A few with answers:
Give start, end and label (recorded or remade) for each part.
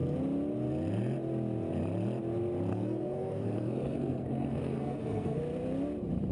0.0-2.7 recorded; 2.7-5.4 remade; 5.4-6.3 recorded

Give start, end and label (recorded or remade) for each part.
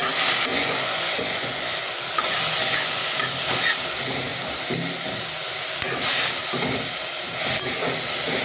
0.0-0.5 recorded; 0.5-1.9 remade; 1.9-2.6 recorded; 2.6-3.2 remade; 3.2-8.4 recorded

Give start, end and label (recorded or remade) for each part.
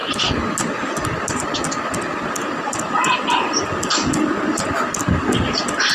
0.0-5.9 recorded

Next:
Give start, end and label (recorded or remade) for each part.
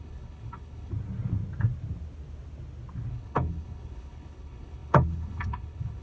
0.0-0.9 remade; 0.9-3.1 recorded; 3.1-6.0 remade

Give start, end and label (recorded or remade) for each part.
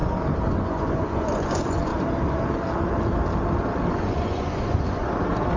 0.0-0.5 recorded; 0.5-1.9 remade; 1.9-3.9 recorded; 3.9-5.0 remade; 5.0-5.6 recorded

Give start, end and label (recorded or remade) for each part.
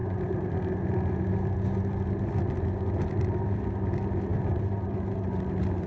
0.0-5.9 recorded